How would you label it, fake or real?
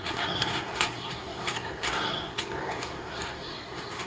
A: fake